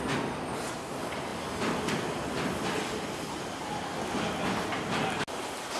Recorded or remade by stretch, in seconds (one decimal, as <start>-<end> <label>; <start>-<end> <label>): 0.0-5.8 recorded